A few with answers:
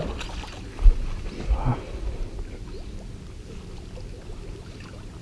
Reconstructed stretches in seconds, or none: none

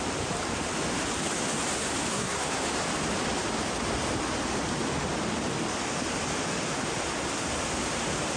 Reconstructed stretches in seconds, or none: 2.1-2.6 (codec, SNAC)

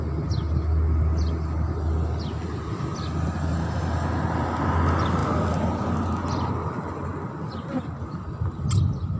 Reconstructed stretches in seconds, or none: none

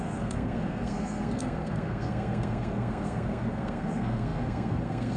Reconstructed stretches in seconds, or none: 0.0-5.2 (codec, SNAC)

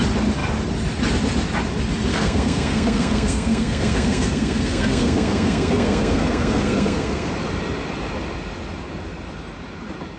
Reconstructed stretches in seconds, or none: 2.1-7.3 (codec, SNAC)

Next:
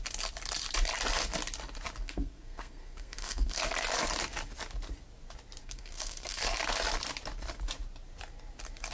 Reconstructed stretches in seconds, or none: 2.0-3.7 (codec, SNAC); 5.6-6.4